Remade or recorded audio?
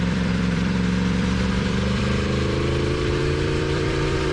remade